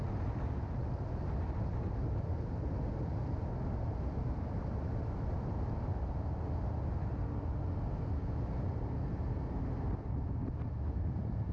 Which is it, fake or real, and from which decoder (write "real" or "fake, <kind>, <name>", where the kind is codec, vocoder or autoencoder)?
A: real